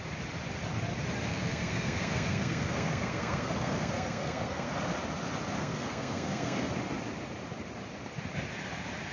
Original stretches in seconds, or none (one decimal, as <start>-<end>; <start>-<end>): 0.0-1.3; 4.7-5.6; 6.7-9.1